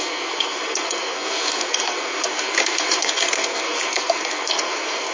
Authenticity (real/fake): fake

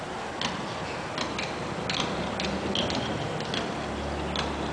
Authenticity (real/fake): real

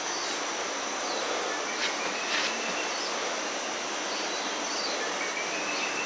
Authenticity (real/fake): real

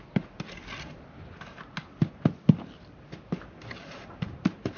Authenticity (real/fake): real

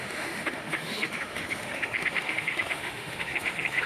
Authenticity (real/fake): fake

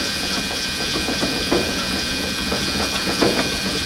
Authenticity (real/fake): fake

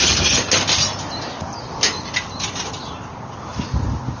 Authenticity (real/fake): real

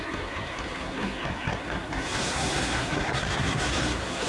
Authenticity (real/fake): fake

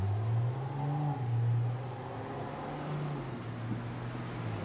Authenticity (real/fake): real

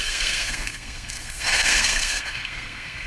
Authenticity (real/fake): fake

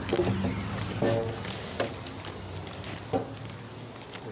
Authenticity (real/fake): real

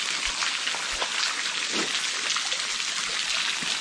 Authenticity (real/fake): real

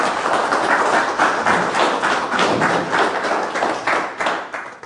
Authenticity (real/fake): real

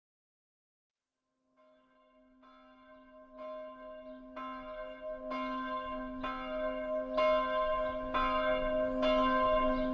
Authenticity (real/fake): real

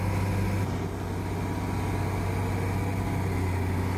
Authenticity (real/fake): real